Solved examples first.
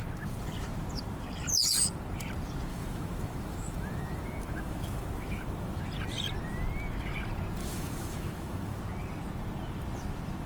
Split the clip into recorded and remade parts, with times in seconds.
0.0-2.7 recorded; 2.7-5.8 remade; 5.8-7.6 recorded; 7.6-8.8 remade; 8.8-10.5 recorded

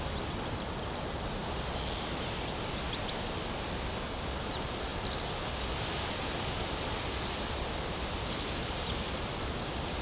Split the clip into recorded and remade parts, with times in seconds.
0.0-10.0 recorded